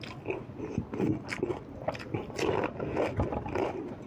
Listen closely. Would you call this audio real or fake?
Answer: real